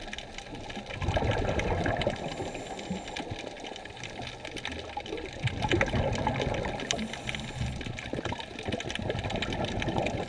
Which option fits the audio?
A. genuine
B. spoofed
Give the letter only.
A